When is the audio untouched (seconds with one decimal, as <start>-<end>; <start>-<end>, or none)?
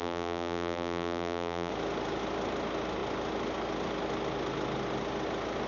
1.7-5.7